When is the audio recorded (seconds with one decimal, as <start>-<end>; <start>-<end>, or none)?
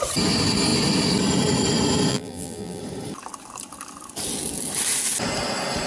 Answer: 0.0-2.1; 2.8-5.9